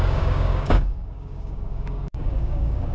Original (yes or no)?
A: no